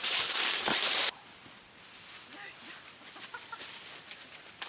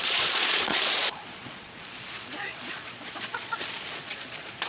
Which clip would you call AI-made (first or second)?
second